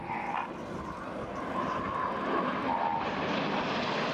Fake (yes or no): no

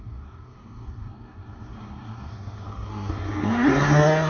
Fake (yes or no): yes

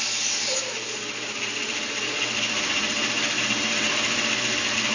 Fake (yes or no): no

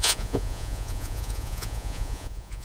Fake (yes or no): yes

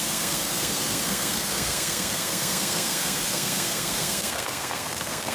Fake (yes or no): yes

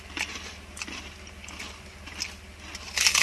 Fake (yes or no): yes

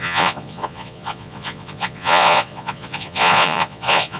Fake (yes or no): yes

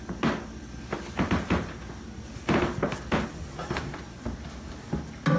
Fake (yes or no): no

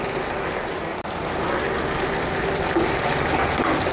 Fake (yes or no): no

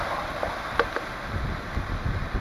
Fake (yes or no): no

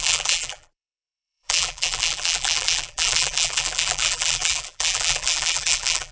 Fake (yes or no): yes